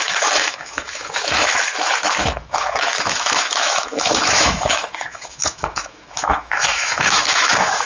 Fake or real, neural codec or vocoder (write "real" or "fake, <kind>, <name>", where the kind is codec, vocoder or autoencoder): fake, autoencoder, DAC-VAE